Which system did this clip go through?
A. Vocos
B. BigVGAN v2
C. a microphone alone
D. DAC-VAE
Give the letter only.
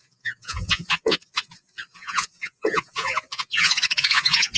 A